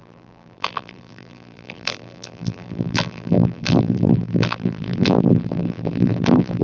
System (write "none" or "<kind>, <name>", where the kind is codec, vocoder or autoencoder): vocoder, BigVGAN v2